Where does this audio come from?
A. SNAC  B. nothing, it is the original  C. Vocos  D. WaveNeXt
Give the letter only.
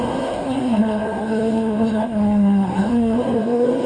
A